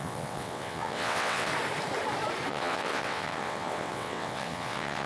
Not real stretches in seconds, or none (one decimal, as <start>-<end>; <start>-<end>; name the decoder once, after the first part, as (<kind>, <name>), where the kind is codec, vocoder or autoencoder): 0.0-1.5 (vocoder, WaveNeXt); 2.5-5.1